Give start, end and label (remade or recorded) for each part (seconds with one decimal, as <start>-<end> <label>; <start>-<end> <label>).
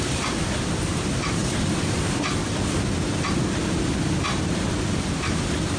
0.0-5.8 recorded